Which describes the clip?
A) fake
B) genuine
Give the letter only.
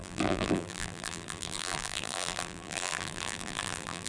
A